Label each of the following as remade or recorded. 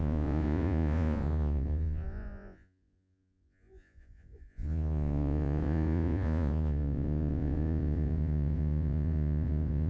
remade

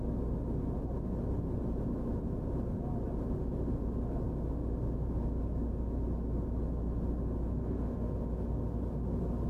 recorded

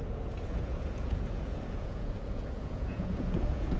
remade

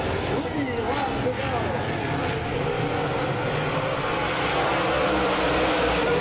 recorded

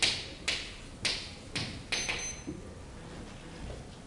recorded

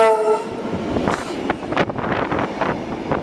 recorded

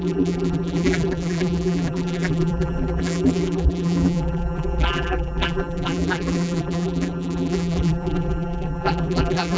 remade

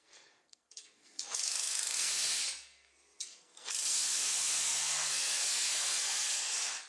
remade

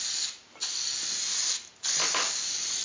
recorded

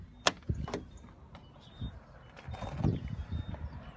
recorded